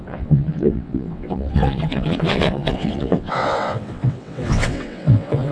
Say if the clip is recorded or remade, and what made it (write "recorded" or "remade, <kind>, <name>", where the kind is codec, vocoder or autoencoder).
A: remade, vocoder, WaveNeXt